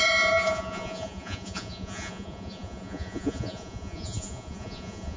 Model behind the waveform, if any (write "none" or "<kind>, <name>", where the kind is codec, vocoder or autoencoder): vocoder, Vocos